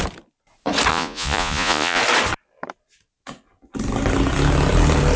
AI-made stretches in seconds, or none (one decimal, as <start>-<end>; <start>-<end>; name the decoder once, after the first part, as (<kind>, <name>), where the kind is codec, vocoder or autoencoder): 0.9-2.0 (vocoder, Vocos)